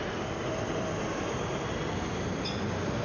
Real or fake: real